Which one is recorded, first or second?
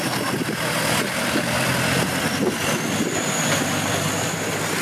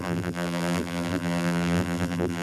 first